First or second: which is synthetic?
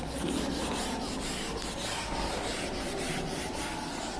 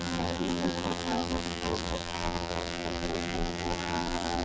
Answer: second